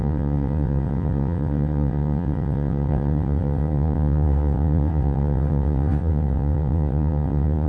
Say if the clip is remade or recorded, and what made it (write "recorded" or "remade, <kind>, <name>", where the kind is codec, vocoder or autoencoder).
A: remade, vocoder, WaveNeXt